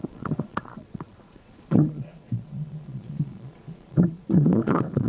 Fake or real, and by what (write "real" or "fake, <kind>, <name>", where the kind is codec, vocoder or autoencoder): fake, vocoder, Vocos